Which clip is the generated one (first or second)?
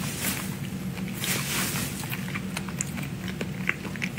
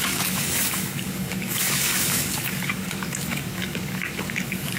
second